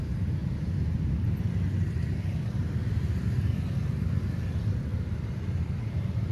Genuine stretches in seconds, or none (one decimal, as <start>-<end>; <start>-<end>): 0.4-2.0; 2.8-4.1; 4.9-5.6